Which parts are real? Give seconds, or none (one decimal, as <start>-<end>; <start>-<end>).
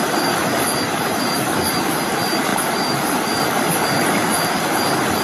0.4-1.7; 2.5-5.2